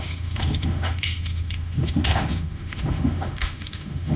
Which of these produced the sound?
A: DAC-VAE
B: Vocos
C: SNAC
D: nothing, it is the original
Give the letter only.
A